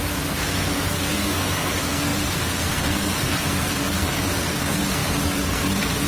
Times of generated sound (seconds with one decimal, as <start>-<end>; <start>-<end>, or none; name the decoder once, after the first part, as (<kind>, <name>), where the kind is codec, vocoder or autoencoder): 0.0-6.1 (codec, SNAC)